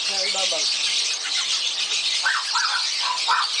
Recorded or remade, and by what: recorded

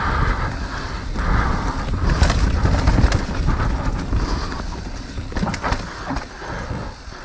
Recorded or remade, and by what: recorded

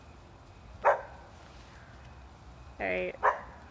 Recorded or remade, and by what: recorded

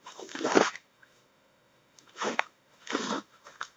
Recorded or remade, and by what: remade, autoencoder, DAC-VAE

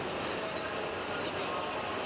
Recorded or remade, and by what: recorded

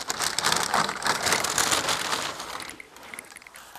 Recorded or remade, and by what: recorded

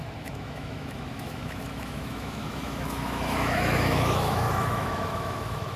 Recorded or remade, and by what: remade, autoencoder, DAC-VAE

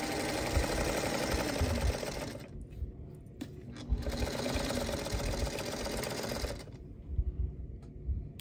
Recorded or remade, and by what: recorded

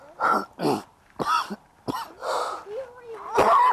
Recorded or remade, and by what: recorded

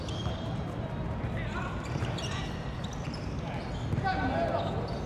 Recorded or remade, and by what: recorded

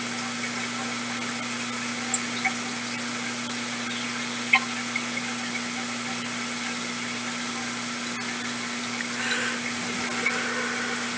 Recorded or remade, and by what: recorded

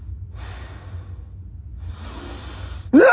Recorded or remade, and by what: recorded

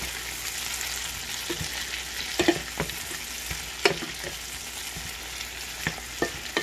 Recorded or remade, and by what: recorded